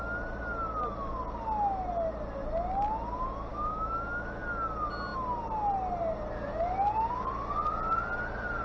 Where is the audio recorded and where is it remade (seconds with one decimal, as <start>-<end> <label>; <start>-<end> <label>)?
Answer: 0.0-3.5 recorded; 3.5-4.4 remade; 4.4-8.6 recorded